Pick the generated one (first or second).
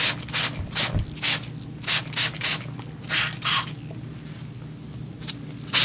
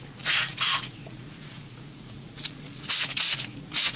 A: second